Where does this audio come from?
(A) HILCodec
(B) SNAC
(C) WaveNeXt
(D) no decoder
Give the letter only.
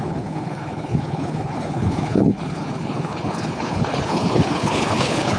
A